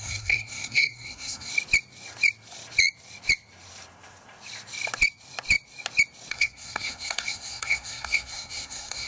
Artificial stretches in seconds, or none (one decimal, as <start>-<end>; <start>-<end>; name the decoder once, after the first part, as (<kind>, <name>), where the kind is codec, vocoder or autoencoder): 0.0-1.5 (codec, SNAC); 6.3-9.1